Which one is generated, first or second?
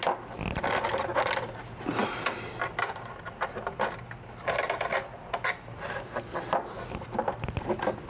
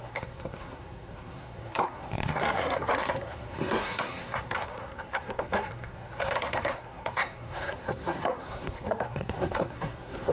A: second